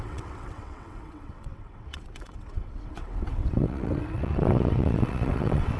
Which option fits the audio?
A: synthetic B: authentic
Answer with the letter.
A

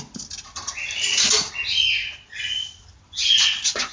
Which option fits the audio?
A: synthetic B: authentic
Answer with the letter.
B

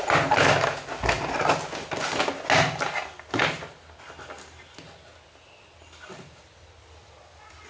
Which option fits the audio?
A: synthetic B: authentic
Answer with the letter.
B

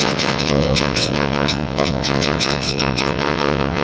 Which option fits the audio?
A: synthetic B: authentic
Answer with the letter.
A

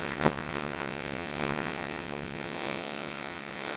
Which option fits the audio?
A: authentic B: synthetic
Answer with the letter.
B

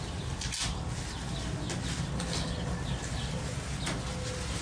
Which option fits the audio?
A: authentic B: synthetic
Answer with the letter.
A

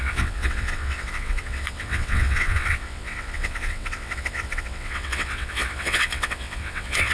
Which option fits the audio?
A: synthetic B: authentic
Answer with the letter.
A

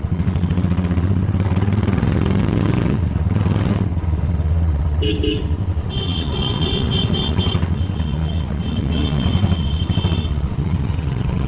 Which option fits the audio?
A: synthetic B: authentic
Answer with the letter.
A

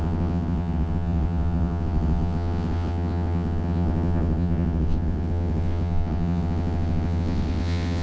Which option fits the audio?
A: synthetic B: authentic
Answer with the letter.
A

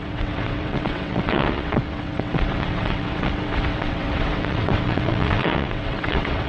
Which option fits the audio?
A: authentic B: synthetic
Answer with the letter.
B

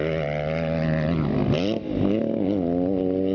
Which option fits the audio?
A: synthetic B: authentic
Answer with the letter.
B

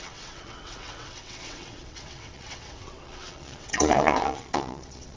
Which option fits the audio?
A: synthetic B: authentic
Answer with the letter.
A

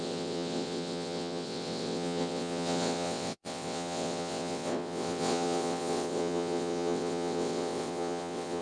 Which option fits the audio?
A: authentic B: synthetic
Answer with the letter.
B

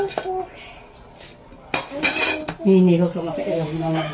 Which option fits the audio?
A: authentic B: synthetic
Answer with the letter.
A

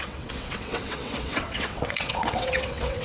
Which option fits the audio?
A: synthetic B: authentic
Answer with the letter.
A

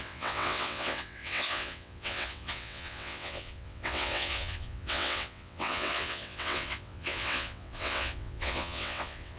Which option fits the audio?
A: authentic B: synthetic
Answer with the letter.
B